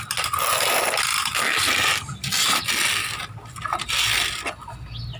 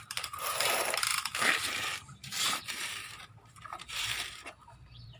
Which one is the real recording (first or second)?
first